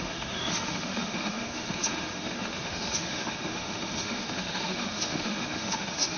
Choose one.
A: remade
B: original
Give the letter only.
A